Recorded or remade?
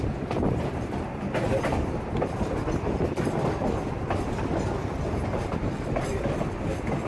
recorded